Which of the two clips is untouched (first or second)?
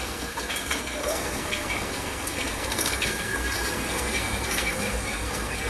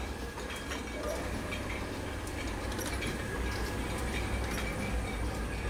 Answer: second